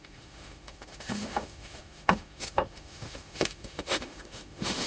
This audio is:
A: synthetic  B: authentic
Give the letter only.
A